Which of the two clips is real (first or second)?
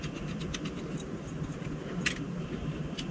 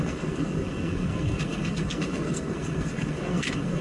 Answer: first